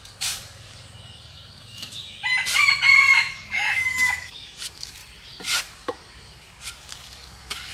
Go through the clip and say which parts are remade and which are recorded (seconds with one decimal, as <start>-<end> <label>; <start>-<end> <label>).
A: 0.0-2.2 remade; 2.2-3.3 recorded; 3.3-5.0 remade; 5.0-5.6 recorded; 5.6-7.7 remade